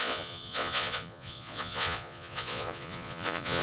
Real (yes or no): no